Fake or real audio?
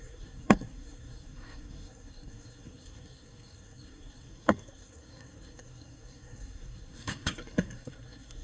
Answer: fake